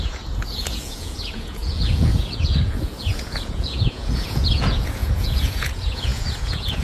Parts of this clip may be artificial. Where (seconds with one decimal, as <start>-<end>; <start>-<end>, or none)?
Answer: 0.0-6.8